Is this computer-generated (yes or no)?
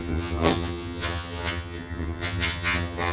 yes